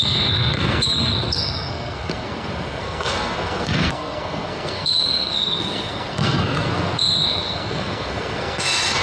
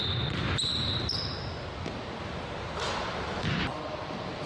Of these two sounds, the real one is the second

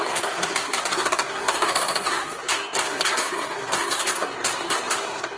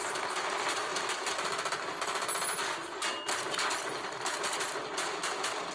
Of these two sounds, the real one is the second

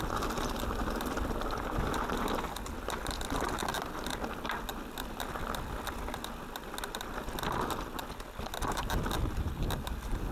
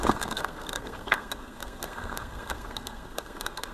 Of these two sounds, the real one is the first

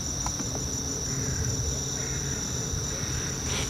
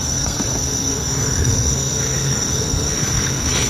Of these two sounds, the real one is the first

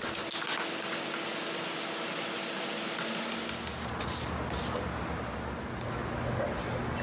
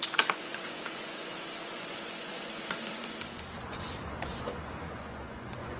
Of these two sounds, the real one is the first